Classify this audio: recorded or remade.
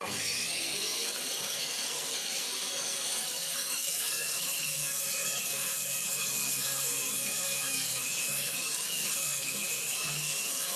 remade